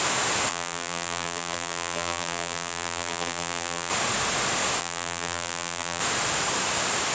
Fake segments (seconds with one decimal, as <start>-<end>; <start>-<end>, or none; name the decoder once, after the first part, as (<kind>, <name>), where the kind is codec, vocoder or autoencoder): 0.5-3.9 (vocoder, BigVGAN v2); 4.8-6.0